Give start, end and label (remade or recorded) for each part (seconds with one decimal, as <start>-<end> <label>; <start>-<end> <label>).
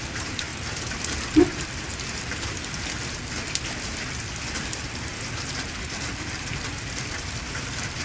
0.0-0.5 remade; 0.5-4.6 recorded; 4.6-5.1 remade; 5.1-6.1 recorded; 6.1-8.0 remade